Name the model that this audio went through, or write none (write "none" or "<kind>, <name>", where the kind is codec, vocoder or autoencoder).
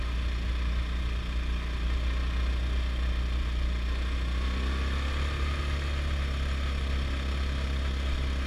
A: none